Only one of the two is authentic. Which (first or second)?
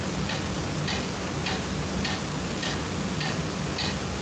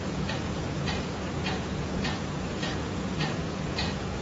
first